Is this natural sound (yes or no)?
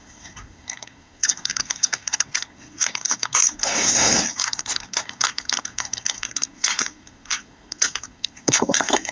no